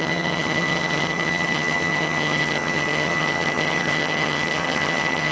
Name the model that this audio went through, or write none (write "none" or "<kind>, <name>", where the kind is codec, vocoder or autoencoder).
vocoder, HiFi-GAN